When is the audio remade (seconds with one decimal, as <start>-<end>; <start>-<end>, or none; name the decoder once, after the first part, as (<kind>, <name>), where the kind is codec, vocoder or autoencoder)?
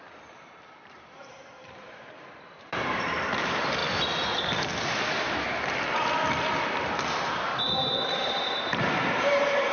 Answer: 0.0-3.8 (vocoder, BigVGAN v2); 8.0-9.7